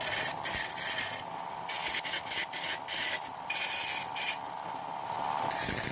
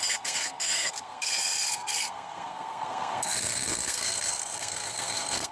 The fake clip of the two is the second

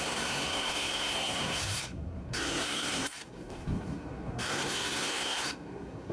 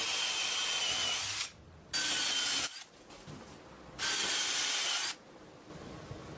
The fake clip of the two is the first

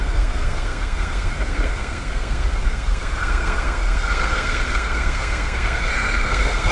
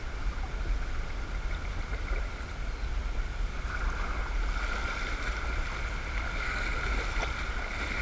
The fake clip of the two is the first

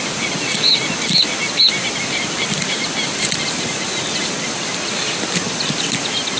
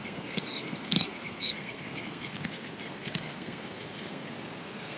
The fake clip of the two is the second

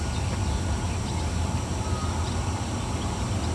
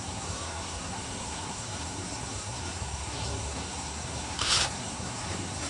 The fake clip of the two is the second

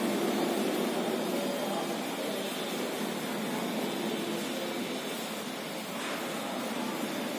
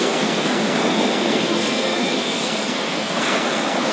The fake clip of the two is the second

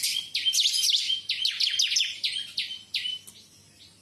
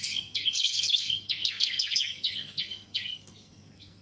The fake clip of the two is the second